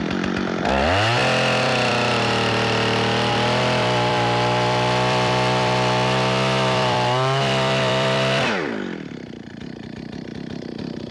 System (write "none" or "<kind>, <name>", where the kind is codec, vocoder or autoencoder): vocoder, BigVGAN v2